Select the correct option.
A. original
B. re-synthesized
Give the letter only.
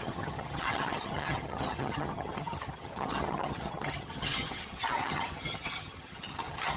B